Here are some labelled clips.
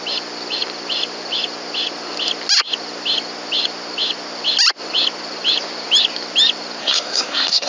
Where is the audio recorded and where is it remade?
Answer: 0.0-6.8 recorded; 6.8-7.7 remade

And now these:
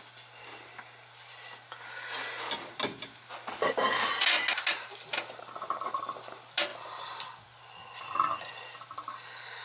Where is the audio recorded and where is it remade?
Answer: 0.0-9.6 recorded

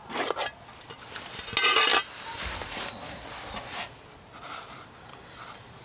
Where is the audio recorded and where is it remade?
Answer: 0.0-5.8 recorded

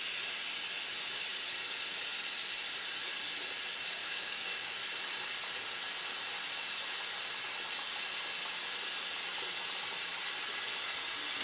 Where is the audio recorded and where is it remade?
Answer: 0.0-4.0 recorded; 4.0-4.7 remade; 4.7-11.4 recorded

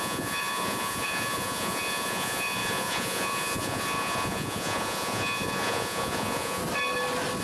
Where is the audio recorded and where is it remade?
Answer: 0.0-6.6 remade; 6.6-7.4 recorded

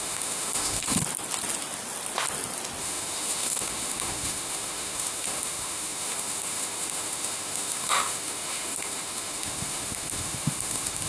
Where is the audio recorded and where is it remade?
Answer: 0.0-1.0 remade; 1.0-2.8 recorded; 2.8-11.1 remade